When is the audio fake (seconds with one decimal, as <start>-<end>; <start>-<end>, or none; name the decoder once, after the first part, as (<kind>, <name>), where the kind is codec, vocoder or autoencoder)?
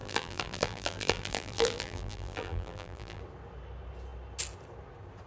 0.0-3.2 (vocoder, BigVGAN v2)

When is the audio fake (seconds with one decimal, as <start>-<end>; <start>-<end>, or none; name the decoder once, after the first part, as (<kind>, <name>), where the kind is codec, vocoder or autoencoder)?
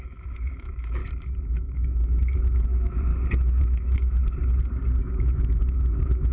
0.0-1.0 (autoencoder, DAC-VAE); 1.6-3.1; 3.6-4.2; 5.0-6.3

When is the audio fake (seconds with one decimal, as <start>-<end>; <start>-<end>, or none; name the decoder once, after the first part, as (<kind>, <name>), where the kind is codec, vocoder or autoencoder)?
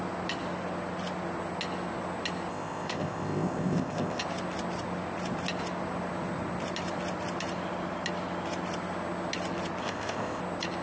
2.5-4.2 (codec, ZipCodec); 9.8-10.4